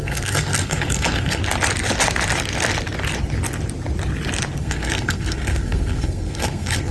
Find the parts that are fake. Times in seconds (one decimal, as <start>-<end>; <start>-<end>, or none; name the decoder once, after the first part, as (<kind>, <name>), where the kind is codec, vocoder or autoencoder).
0.0-1.4 (codec, SNAC); 4.6-6.9